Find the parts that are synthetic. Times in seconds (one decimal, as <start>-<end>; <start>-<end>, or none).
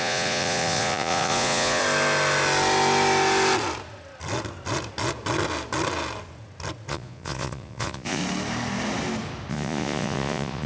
0.0-1.8; 6.9-8.2; 9.5-10.7